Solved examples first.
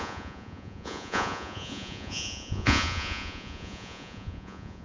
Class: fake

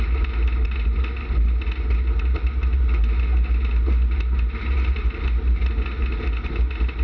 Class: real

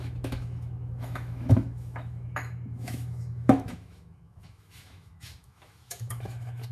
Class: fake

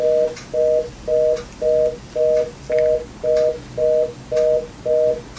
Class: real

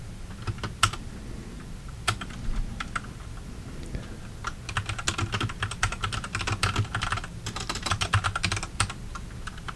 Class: real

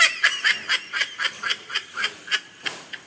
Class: fake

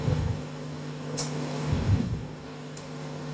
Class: fake